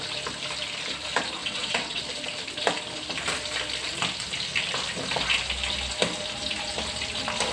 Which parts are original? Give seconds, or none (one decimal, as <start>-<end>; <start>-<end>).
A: 0.0-1.4; 2.0-7.5